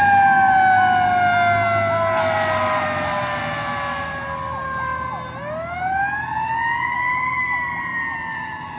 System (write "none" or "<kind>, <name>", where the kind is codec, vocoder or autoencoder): none